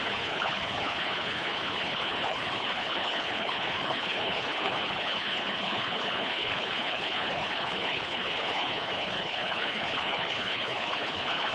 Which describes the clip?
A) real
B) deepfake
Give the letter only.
B